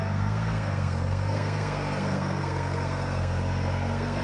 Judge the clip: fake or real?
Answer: fake